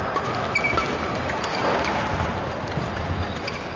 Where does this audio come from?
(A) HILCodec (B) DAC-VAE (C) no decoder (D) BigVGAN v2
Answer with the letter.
C